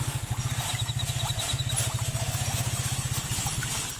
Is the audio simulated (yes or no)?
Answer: no